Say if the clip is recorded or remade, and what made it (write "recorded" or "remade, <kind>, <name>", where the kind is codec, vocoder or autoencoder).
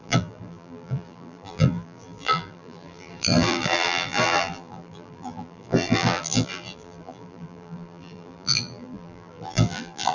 remade, vocoder, BigVGAN v2